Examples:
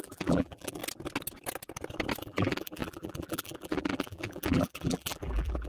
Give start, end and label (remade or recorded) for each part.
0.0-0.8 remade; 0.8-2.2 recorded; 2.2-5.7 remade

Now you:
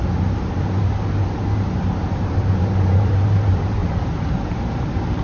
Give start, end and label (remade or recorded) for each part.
0.0-3.8 remade; 3.8-5.2 recorded

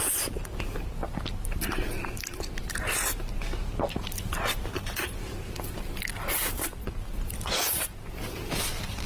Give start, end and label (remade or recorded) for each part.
0.0-1.0 recorded; 1.0-2.4 remade; 2.4-9.1 recorded

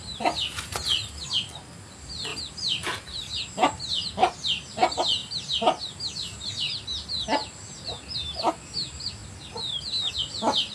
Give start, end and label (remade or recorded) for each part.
0.0-2.3 recorded; 2.3-3.2 remade; 3.2-7.4 recorded; 7.4-8.5 remade; 8.5-10.7 recorded

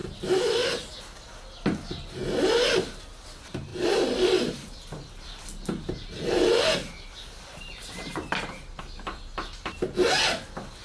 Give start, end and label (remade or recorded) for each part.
0.0-1.0 remade; 1.0-3.7 recorded; 3.7-8.8 remade; 8.8-10.8 recorded